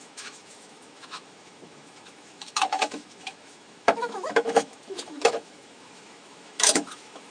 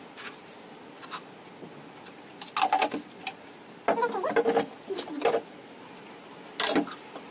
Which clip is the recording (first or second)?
second